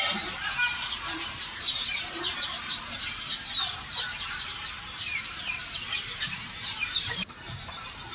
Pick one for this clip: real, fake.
fake